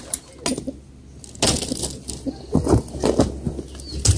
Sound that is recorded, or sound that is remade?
recorded